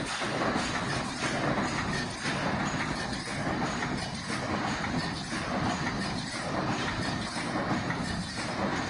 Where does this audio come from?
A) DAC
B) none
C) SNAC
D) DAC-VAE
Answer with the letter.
B